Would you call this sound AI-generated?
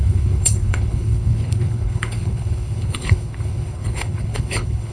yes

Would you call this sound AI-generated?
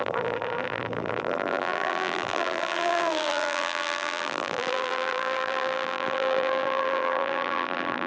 yes